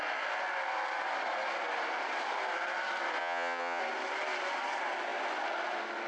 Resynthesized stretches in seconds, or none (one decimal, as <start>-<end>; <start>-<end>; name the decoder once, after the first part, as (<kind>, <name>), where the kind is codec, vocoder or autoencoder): 3.2-3.8 (vocoder, WaveNeXt)